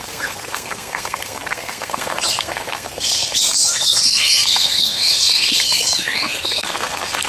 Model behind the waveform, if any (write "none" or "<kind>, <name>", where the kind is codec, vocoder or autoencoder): codec, SNAC